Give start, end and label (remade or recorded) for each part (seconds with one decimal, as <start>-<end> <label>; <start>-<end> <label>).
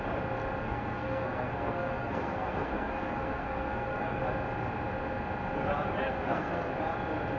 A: 0.0-0.6 recorded; 0.6-4.2 remade; 4.2-6.0 recorded; 6.0-6.7 remade; 6.7-7.4 recorded